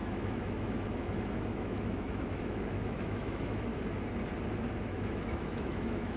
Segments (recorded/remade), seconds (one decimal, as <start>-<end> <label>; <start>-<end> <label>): 0.0-3.7 remade; 3.7-4.8 recorded; 4.8-6.2 remade